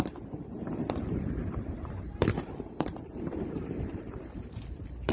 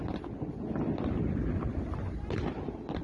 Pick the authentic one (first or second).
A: second